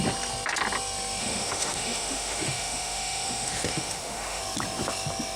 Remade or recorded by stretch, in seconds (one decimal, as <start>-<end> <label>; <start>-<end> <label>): 0.0-1.2 recorded; 1.2-4.4 remade; 4.4-5.4 recorded